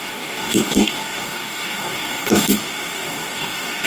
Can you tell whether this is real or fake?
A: fake